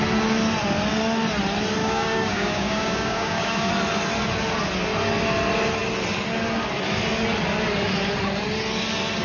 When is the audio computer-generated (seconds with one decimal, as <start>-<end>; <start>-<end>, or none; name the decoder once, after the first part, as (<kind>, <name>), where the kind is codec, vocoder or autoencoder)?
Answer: 1.8-3.7 (codec, DAC)